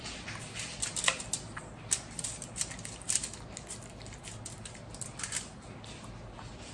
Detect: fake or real real